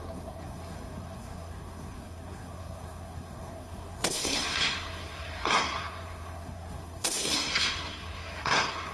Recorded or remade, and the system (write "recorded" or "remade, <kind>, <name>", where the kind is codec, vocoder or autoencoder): remade, codec, SNAC